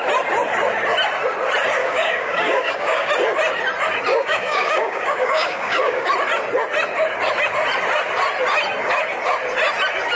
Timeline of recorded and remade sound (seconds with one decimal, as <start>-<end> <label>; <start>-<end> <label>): 0.0-1.8 recorded; 1.8-3.1 remade; 3.1-4.1 recorded; 4.1-6.1 remade; 6.1-10.2 recorded